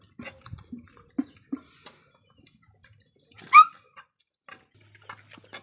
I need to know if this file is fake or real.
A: real